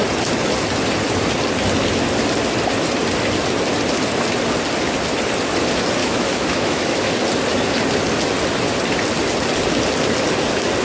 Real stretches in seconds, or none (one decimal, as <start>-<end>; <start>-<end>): 0.0-6.0; 7.1-10.8